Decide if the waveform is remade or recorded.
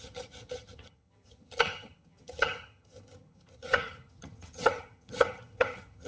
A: remade